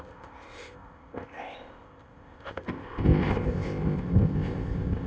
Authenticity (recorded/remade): remade